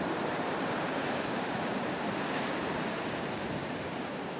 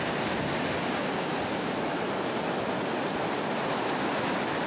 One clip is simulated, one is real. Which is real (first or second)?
second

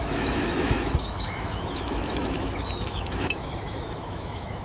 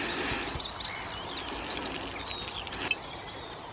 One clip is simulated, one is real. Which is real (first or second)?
second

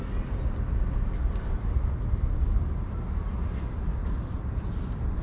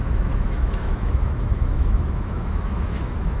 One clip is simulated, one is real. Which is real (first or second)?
first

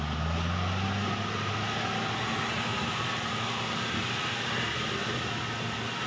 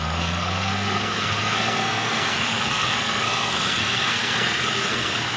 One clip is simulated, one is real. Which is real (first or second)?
first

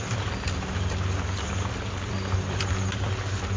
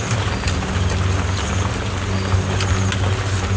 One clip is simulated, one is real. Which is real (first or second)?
second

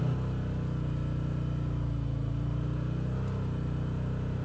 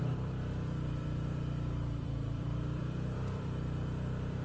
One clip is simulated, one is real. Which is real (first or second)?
first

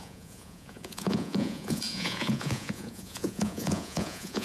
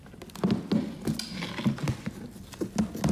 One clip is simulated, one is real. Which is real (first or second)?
second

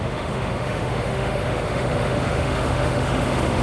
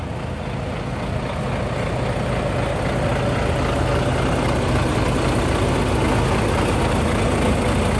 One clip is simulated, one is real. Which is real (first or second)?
second